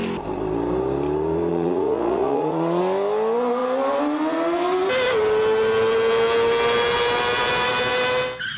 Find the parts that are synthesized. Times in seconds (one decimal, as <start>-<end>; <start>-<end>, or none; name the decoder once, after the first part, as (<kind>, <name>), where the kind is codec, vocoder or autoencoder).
1.5-2.8 (vocoder, Vocos)